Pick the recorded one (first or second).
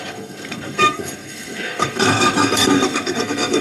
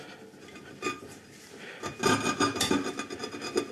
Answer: second